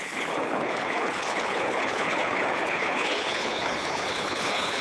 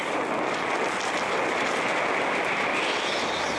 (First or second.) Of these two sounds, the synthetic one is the first